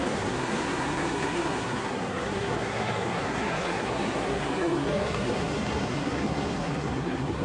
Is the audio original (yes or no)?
no